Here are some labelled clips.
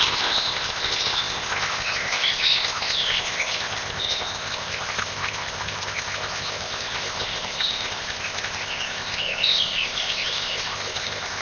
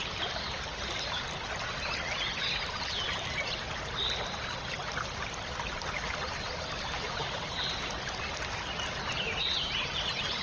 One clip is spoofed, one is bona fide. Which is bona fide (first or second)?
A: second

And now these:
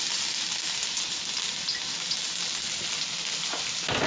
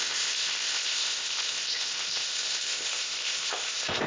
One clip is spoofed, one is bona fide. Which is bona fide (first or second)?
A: first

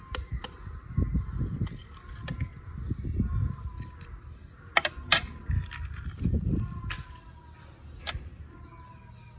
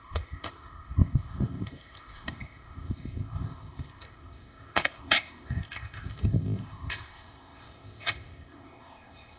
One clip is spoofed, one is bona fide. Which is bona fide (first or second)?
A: first